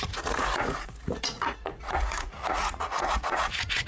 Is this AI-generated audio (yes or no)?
yes